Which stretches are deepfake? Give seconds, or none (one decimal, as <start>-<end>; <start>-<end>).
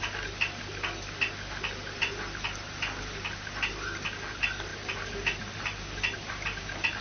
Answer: none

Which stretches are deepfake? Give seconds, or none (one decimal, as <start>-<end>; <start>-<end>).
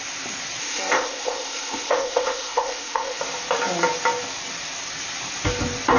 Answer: 0.6-3.2